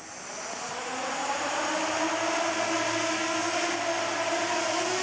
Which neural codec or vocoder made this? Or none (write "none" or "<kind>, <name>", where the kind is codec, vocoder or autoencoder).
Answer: none